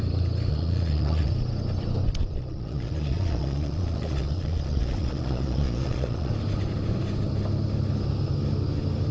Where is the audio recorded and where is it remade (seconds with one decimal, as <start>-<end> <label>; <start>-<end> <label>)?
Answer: 0.0-0.5 recorded; 0.5-1.3 remade; 1.3-2.3 recorded; 2.3-6.3 remade; 6.3-9.1 recorded